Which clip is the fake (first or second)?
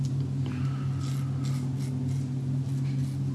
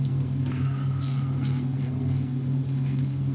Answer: second